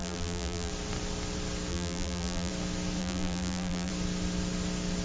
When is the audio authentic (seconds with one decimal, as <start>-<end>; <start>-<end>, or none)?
0.7-1.7; 2.5-3.0; 3.9-5.0